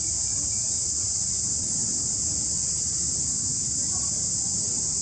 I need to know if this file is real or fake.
real